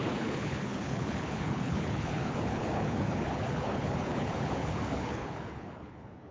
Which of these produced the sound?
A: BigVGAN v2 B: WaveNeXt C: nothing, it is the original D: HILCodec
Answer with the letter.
D